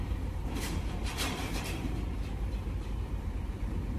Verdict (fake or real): fake